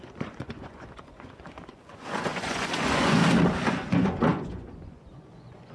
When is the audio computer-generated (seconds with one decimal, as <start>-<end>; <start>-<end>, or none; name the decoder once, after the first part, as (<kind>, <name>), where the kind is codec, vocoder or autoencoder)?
0.0-3.2 (vocoder, Vocos); 3.7-5.7